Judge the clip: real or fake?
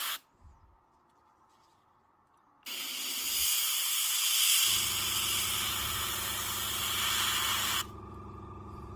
real